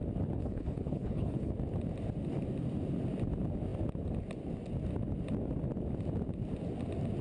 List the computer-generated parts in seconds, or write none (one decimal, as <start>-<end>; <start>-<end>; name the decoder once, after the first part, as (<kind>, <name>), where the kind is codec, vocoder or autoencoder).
0.4-1.5 (codec, HILCodec)